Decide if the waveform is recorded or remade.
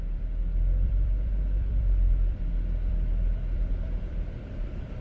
remade